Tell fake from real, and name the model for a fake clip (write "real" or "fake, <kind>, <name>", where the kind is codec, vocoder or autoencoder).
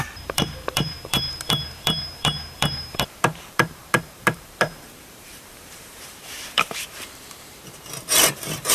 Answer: fake, vocoder, BigVGAN v2